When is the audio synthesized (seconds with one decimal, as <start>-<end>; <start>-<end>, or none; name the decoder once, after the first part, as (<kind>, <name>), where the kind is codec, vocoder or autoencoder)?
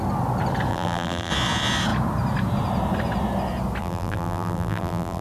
0.7-1.3 (vocoder, BigVGAN v2); 3.8-5.2